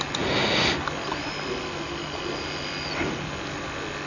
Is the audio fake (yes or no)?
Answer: no